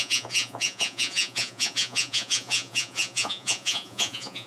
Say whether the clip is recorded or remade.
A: remade